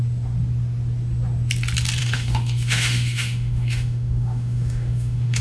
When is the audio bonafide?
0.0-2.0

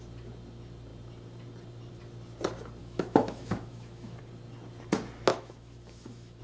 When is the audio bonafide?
0.0-2.8; 4.2-5.3

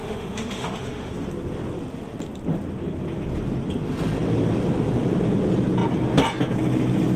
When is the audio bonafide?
1.1-7.2

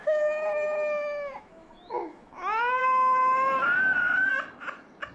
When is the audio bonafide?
2.8-5.1

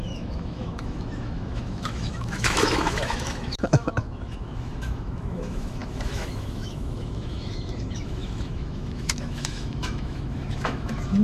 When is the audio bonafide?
none

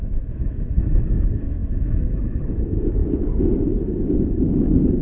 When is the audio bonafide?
3.0-4.0

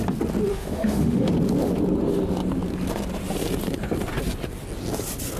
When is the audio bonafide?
0.0-0.5; 1.3-5.4